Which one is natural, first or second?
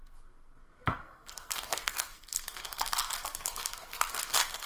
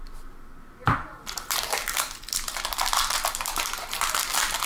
second